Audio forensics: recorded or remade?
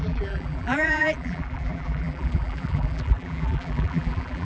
remade